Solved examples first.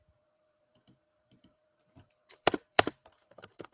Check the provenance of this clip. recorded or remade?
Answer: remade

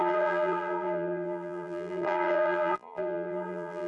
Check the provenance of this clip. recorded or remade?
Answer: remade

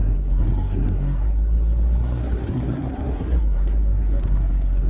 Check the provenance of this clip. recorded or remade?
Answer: remade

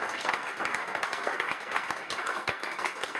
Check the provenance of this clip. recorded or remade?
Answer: remade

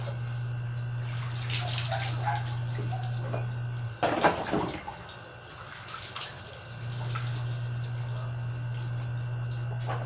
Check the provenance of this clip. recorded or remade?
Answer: recorded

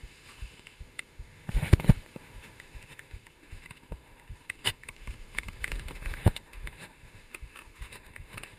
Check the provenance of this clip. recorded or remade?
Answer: remade